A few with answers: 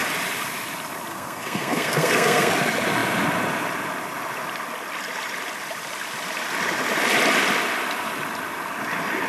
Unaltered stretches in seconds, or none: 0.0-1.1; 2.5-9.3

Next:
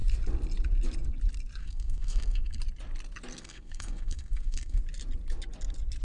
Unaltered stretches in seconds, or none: 0.0-1.6; 2.6-3.4; 4.8-6.0

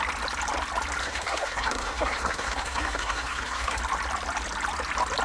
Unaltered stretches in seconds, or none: 0.0-1.0; 3.8-5.2

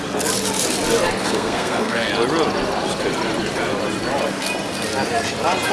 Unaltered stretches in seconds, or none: 0.0-1.2; 2.1-5.7

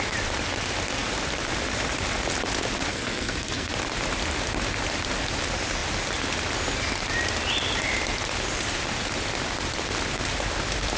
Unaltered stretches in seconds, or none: 0.0-2.9; 3.7-11.0

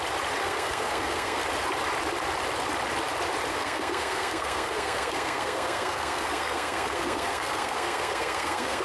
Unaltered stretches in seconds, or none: 0.0-0.4; 1.4-3.5

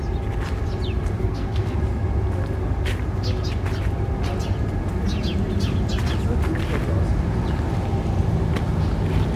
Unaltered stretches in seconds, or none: 0.0-1.2; 1.8-9.4